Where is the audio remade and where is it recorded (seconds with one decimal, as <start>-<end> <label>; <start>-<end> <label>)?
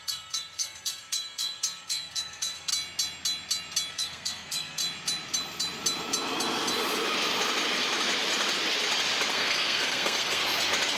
0.0-2.7 remade; 2.7-3.9 recorded; 3.9-4.8 remade; 4.8-9.3 recorded; 9.3-10.4 remade; 10.4-11.0 recorded